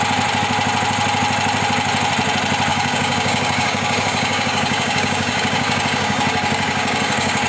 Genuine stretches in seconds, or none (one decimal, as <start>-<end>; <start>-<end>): 0.0-2.7